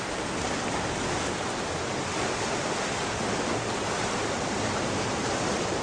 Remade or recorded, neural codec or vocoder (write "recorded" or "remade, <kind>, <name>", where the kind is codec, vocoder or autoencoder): recorded